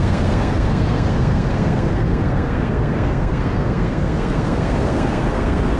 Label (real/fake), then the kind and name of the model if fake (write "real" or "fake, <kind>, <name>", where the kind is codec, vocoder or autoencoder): fake, codec, SNAC